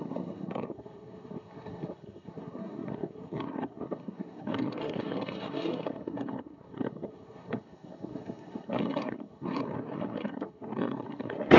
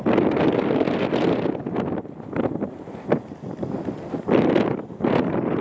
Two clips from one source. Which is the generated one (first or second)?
first